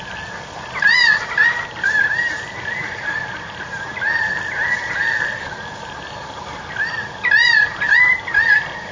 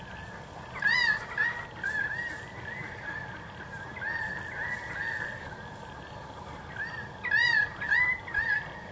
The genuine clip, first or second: second